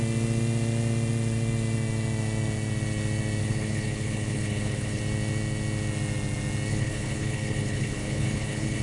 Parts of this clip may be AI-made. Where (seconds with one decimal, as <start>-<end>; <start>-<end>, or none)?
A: 3.4-5.0; 6.7-8.8